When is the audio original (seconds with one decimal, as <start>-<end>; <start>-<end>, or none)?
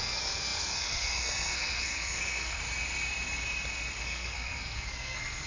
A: 2.6-4.0